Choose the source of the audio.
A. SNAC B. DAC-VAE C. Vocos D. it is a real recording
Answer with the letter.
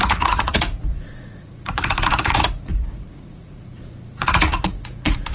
C